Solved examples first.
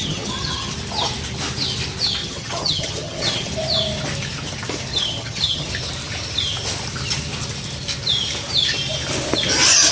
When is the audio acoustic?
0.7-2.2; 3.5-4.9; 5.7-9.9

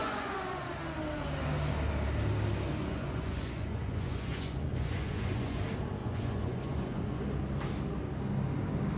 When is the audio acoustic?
0.7-2.8; 5.6-6.0; 7.2-9.0

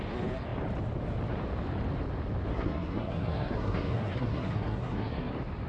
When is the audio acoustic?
0.0-2.5; 5.3-5.7